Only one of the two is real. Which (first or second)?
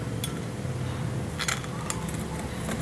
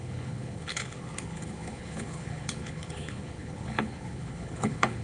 first